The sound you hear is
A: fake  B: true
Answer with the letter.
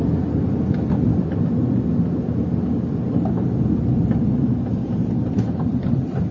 A